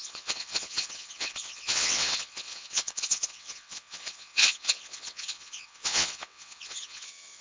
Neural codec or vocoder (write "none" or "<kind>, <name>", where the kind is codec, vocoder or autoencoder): vocoder, WaveNeXt